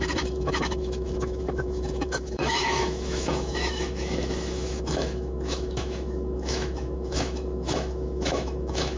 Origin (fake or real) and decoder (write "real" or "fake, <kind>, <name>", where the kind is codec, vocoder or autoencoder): fake, autoencoder, DAC-VAE